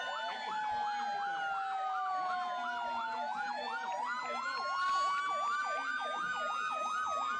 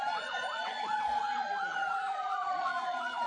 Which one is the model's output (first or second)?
second